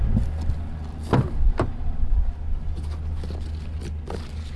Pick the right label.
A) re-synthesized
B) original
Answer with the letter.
B